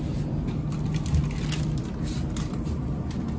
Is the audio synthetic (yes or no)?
no